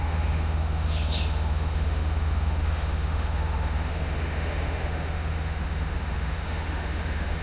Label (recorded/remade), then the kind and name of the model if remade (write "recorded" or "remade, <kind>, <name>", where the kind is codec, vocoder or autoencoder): remade, autoencoder, DAC-VAE